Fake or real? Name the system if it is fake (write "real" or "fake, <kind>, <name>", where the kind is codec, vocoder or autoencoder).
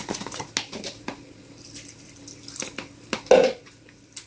real